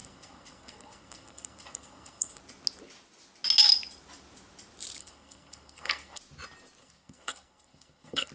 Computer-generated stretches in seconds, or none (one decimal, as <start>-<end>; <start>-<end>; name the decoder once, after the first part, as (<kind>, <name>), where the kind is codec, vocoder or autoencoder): 0.0-2.4 (codec, SNAC); 5.0-6.2; 6.8-8.3